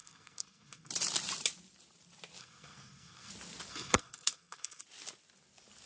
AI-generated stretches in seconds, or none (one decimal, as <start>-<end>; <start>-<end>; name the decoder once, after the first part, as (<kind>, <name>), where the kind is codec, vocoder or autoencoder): 0.0-0.9 (codec, SNAC); 2.4-3.3; 3.7-4.8